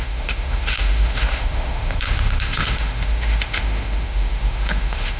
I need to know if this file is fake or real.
fake